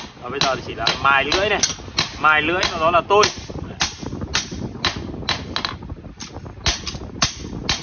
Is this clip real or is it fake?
real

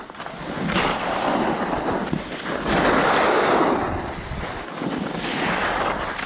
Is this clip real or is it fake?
real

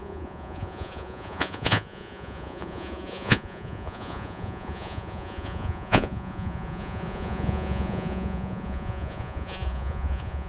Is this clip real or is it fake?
fake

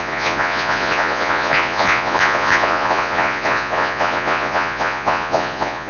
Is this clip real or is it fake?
fake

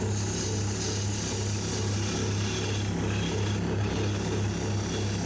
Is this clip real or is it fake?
real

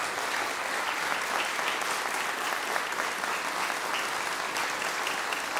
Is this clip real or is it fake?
real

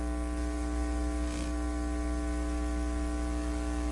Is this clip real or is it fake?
real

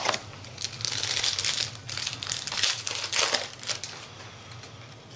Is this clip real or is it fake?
real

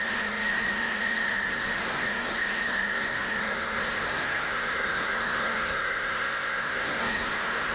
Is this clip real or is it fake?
fake